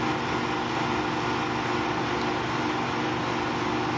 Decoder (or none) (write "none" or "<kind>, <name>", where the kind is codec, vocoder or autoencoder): none